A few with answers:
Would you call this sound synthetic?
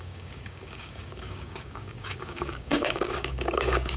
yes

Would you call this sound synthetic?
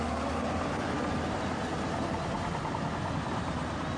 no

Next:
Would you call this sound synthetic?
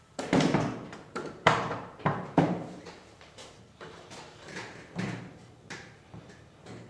yes